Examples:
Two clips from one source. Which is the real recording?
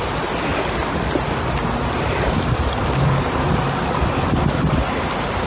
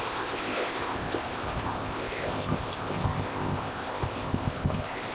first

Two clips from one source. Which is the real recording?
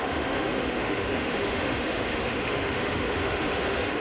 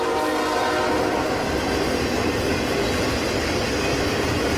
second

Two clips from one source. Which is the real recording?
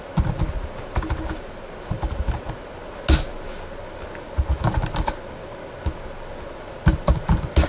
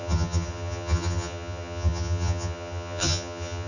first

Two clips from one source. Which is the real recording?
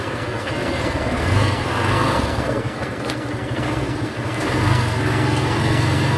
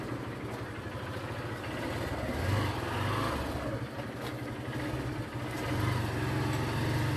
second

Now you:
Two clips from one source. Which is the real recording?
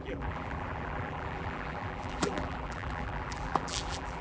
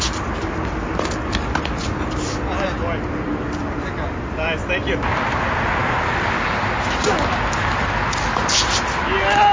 second